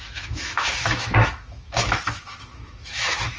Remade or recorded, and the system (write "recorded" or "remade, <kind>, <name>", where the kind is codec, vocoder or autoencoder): remade, autoencoder, DAC-VAE